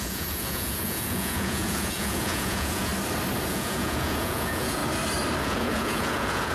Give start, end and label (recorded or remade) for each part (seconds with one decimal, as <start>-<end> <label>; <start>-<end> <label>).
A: 0.0-2.9 remade; 2.9-3.5 recorded; 3.5-4.8 remade; 4.8-5.4 recorded; 5.4-6.5 remade